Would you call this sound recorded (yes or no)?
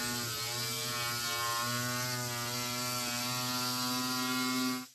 yes